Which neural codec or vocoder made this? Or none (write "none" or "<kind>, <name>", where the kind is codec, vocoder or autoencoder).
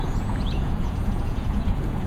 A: vocoder, Vocos